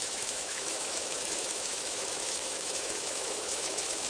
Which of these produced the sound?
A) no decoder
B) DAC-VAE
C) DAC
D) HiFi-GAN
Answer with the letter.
B